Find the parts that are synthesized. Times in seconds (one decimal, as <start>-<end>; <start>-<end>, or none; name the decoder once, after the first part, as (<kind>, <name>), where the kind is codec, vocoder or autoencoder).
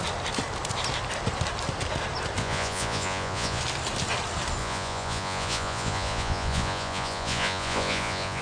2.4-3.6 (vocoder, Vocos); 4.6-8.4